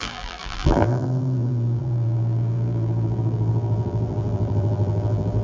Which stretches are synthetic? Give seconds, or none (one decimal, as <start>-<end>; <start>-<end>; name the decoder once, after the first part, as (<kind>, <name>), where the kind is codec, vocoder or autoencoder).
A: 0.0-5.4 (vocoder, BigVGAN v2)